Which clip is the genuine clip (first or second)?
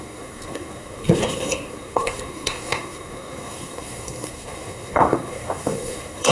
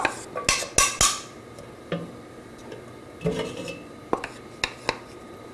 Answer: second